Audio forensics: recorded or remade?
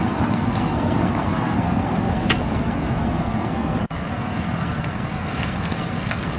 remade